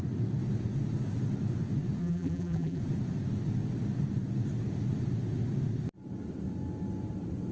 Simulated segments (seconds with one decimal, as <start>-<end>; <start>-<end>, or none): 2.0-2.8